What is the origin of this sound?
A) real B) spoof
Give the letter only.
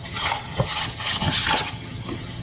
B